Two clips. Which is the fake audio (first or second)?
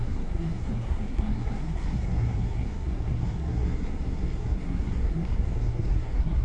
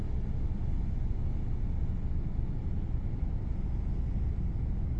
first